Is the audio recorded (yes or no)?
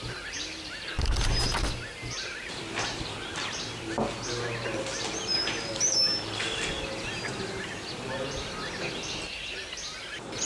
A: yes